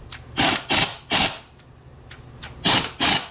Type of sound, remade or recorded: recorded